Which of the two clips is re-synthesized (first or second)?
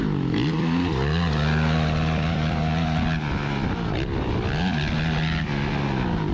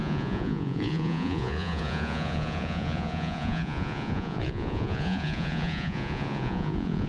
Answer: second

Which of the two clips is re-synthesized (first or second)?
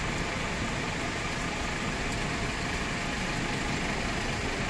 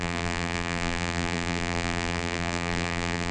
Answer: second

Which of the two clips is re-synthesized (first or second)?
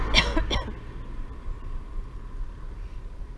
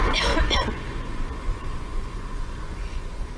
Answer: second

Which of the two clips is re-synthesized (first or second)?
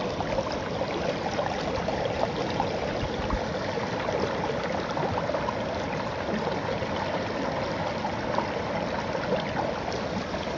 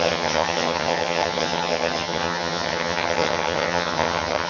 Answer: second